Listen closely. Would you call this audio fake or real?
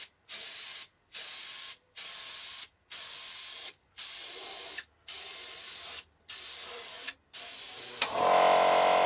real